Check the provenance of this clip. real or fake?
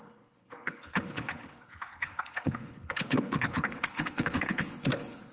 fake